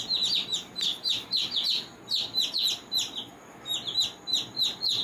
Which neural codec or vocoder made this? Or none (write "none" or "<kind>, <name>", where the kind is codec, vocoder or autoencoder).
none